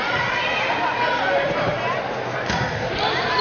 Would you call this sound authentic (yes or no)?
no